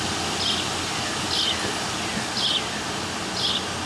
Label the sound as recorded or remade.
recorded